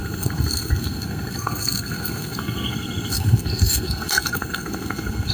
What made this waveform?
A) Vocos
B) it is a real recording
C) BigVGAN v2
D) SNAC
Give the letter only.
D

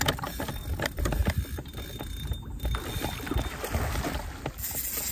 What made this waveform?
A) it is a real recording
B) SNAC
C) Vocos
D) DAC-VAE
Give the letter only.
A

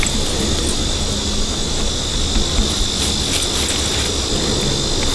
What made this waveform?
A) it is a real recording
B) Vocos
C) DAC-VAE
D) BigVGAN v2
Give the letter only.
A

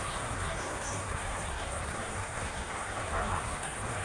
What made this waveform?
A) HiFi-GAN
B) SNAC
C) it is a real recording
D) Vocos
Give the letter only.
B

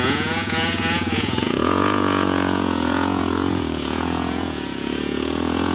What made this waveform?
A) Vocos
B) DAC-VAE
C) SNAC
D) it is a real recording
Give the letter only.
A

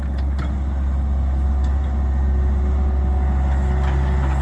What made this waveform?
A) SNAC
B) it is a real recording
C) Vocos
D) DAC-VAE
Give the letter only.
B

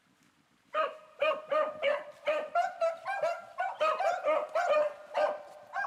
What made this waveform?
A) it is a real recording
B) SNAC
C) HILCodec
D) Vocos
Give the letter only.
A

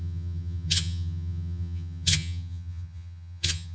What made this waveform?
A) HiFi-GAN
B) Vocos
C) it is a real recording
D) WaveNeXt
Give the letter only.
A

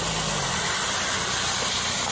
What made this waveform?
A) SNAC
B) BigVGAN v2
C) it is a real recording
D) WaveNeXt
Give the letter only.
C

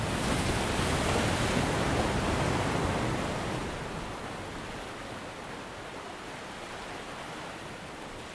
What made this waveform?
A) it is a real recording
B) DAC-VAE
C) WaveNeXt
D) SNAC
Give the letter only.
A